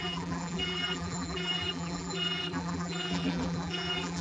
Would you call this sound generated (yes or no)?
yes